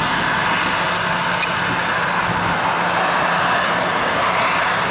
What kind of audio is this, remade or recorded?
recorded